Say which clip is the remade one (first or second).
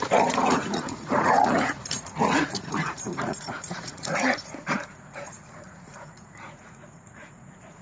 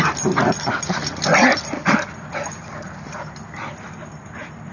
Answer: first